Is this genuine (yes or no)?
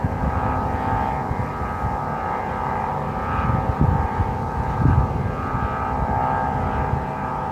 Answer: yes